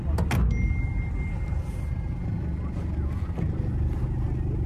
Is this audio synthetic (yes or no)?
no